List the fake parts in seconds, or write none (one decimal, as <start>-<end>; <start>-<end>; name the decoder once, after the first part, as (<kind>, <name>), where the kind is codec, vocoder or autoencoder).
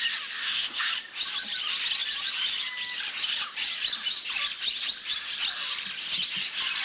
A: 0.4-0.9 (autoencoder, DAC-VAE)